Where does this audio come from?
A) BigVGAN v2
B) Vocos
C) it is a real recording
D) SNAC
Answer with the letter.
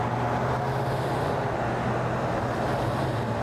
C